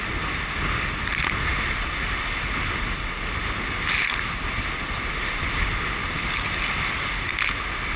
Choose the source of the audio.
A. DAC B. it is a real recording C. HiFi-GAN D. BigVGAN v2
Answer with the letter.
B